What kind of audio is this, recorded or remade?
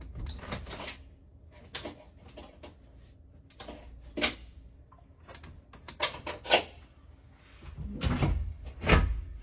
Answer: recorded